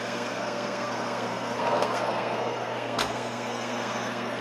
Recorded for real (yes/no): no